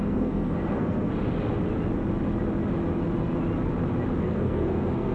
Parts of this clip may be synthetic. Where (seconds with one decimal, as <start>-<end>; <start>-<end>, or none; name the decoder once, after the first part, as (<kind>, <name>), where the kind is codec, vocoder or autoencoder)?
0.0-1.1 (codec, SNAC); 4.2-5.1